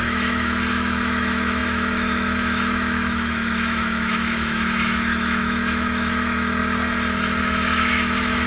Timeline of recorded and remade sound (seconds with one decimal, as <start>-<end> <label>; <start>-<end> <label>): 0.0-6.6 remade; 6.6-7.4 recorded; 7.4-8.5 remade